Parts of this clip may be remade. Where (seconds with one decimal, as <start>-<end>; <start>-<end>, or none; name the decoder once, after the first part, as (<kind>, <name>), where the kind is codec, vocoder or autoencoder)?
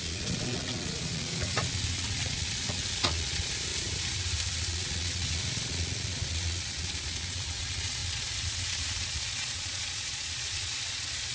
0.0-3.7 (vocoder, Vocos); 4.6-11.3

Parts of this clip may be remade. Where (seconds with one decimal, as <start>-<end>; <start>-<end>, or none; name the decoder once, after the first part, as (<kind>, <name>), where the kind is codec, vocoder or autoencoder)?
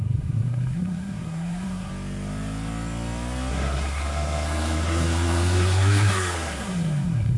0.0-1.9 (codec, SNAC); 3.5-7.4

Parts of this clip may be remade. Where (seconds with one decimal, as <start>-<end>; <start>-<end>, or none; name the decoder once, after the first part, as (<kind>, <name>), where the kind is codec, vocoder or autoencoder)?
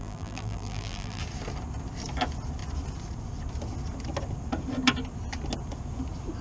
0.0-1.2 (vocoder, BigVGAN v2)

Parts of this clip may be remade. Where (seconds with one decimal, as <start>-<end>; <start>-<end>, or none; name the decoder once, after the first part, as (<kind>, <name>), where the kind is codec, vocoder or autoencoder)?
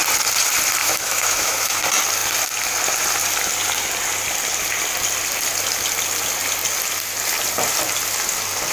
0.8-1.8 (autoencoder, DAC-VAE)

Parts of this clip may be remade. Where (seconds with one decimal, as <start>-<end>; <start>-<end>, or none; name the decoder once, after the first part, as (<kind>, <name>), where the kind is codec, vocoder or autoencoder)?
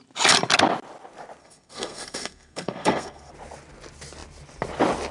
1.4-3.3 (codec, SNAC)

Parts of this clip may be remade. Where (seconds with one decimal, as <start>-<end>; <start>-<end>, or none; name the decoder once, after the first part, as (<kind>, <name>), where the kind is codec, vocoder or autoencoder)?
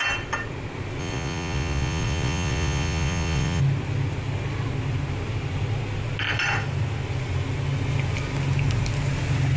1.0-3.6 (vocoder, Vocos)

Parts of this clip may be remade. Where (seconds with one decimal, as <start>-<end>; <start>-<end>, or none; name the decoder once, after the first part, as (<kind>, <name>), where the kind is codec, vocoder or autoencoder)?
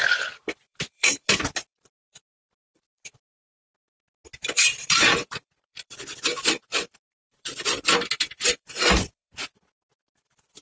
0.0-3.6 (vocoder, BigVGAN v2); 4.5-10.6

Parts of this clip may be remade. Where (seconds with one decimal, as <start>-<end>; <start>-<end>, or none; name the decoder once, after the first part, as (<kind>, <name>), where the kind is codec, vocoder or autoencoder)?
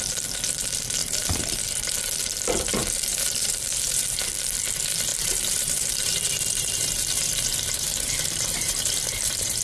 1.0-1.6 (vocoder, BigVGAN v2); 2.8-4.2; 5.1-9.6